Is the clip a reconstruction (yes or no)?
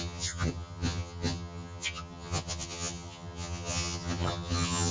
yes